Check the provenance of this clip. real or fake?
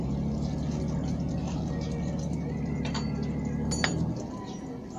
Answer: real